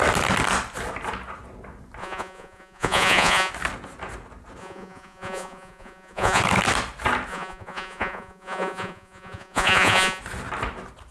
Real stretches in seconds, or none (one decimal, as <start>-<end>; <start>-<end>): 0.0-2.0; 3.5-4.6; 6.4-7.3; 10.2-11.1